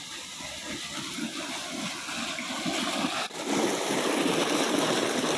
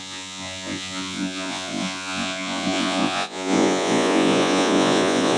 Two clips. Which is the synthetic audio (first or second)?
second